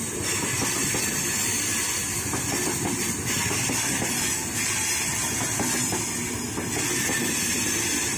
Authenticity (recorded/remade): recorded